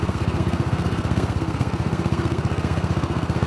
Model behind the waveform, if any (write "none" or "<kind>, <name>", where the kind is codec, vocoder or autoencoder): codec, SNAC